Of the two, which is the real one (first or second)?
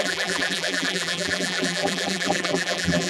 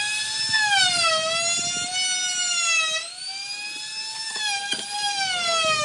second